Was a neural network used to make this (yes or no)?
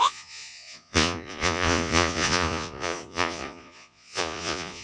yes